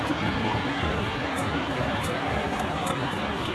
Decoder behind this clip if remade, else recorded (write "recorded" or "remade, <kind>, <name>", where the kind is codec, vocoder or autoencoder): remade, codec, SNAC